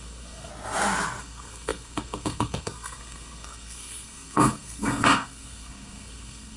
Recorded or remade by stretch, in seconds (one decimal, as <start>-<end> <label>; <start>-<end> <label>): 0.0-0.5 remade; 0.5-1.2 recorded; 1.2-6.6 remade